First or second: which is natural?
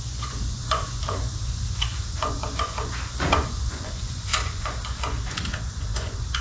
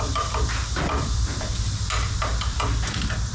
second